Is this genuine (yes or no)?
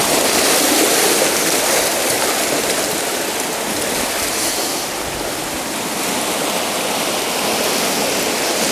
yes